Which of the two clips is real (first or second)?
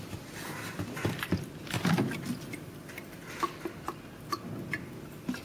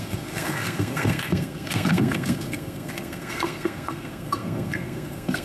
first